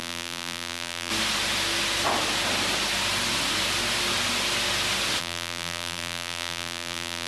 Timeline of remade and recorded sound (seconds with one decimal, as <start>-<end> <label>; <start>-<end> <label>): 0.0-1.1 remade; 1.1-5.2 recorded; 5.2-7.3 remade